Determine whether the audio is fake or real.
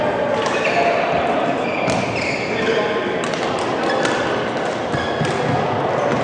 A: real